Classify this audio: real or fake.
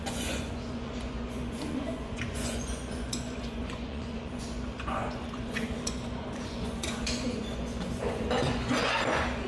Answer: fake